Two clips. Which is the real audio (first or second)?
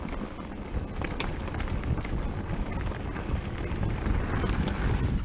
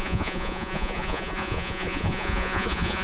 first